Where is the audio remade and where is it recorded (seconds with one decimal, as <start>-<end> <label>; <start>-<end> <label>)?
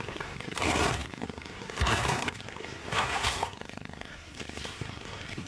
0.0-5.5 remade